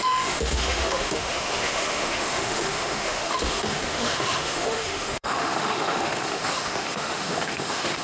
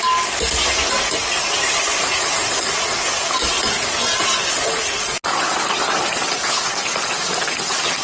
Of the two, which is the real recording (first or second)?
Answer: second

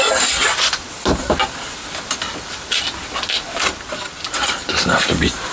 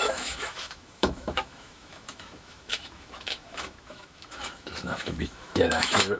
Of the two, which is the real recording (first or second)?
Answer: first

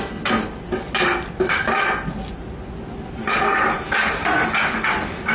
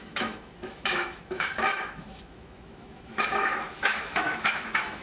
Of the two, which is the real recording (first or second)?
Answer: first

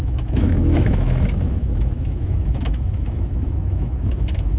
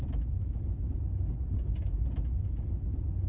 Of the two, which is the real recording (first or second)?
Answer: second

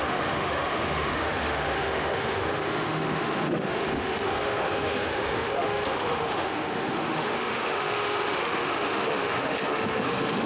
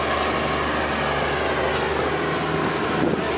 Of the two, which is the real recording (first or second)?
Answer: second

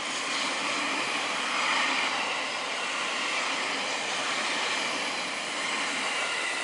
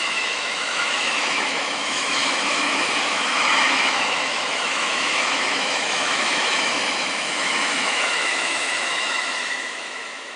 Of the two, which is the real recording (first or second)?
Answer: first